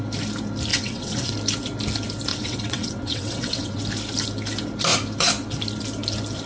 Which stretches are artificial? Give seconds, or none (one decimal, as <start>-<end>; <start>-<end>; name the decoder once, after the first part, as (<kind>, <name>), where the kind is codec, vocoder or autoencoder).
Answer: 0.7-1.3 (vocoder, WaveNeXt); 2.3-3.8